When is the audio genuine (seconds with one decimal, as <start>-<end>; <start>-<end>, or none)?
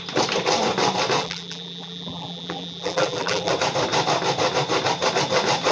0.0-1.2; 3.5-5.7